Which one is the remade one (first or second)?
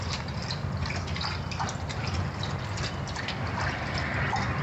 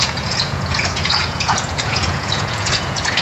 second